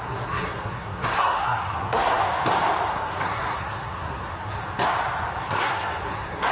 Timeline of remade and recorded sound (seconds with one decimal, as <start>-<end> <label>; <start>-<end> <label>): 0.0-2.2 remade; 2.2-2.9 recorded; 2.9-4.6 remade; 4.6-5.4 recorded; 5.4-6.5 remade